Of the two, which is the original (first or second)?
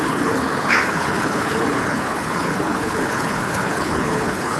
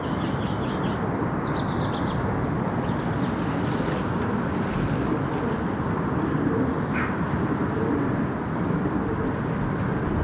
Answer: second